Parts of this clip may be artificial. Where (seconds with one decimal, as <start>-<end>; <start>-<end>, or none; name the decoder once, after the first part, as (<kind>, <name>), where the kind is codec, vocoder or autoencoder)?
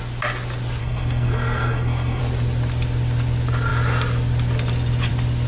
0.8-2.2 (codec, SNAC)